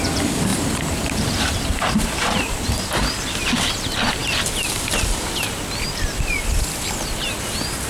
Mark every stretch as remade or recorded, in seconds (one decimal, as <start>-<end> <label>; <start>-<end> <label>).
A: 0.0-0.5 recorded; 0.5-3.1 remade; 3.1-7.9 recorded